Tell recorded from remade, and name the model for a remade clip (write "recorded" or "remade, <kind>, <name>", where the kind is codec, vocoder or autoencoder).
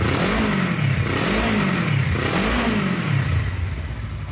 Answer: recorded